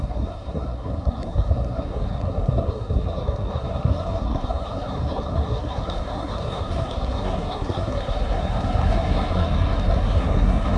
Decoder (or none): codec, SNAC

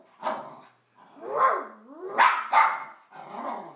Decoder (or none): none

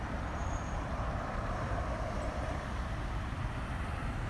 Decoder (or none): vocoder, BigVGAN v2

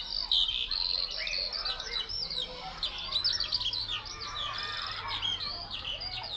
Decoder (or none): none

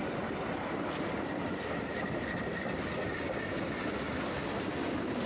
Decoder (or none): none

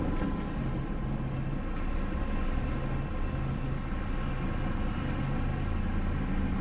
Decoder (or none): none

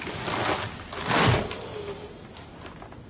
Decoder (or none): none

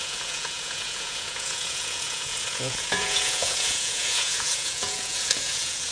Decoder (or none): vocoder, Vocos